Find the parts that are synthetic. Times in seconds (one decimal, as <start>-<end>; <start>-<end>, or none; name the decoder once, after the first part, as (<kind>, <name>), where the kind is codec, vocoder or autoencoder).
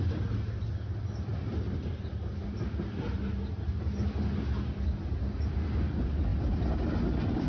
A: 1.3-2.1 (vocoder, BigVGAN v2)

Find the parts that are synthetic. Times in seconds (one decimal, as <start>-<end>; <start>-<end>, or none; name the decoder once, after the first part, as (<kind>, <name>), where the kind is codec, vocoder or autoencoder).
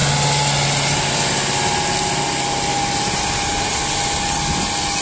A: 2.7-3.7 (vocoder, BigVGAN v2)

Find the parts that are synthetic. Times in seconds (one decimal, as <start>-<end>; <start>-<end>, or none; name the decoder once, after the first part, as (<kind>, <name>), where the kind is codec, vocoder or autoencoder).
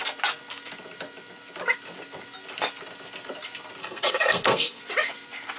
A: 3.8-4.8 (codec, SNAC)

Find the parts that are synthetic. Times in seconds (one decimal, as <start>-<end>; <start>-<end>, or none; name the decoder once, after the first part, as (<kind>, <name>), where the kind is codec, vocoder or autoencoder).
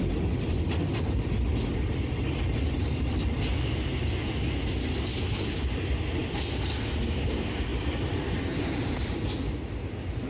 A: none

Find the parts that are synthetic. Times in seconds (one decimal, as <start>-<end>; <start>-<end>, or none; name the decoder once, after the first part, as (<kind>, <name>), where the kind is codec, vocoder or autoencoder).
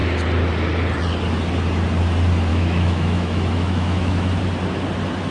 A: 2.5-4.4 (autoencoder, DAC-VAE)